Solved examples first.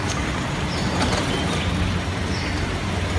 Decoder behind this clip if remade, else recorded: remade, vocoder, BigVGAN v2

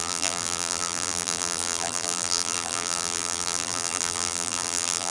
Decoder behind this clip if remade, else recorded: remade, vocoder, BigVGAN v2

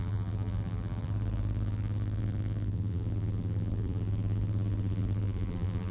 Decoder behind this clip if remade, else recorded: remade, vocoder, BigVGAN v2